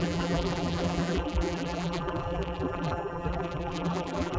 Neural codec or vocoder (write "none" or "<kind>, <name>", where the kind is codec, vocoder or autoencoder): vocoder, BigVGAN v2